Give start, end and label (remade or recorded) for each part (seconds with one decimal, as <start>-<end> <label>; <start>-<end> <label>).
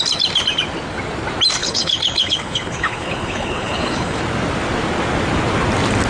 0.0-1.6 recorded; 1.6-4.2 remade; 4.2-6.1 recorded